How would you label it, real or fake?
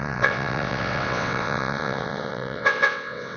fake